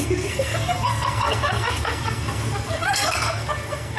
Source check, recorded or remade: remade